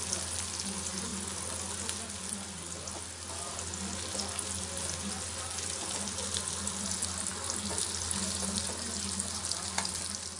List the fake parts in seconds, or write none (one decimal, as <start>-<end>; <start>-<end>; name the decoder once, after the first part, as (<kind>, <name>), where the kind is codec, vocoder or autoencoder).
none